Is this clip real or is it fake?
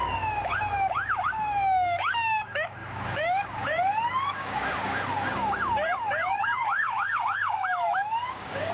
fake